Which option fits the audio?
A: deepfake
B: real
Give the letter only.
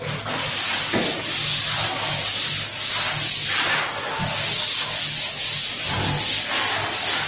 B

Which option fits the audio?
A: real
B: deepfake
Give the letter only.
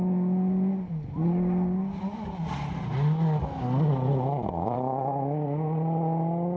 A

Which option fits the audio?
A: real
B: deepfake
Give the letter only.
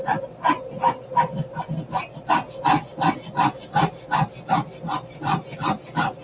A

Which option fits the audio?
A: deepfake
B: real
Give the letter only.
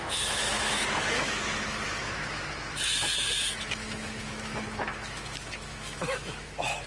A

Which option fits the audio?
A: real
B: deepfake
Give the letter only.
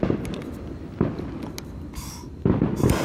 A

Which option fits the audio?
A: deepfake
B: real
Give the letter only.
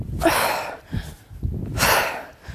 B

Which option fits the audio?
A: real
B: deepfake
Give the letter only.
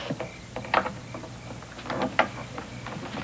A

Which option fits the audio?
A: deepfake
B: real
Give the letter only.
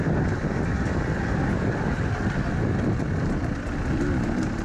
B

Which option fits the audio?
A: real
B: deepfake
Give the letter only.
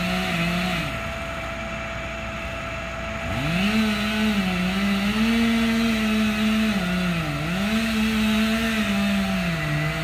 A